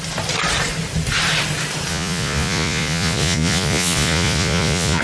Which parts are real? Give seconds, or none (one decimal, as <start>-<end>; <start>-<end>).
0.0-1.9